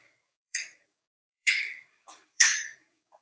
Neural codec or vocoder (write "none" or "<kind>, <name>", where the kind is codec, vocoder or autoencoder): codec, DAC